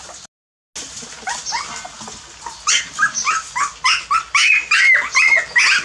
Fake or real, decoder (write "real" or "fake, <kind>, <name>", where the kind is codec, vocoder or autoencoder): real